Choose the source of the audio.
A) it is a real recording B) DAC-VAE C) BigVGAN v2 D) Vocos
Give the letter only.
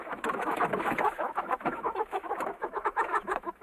B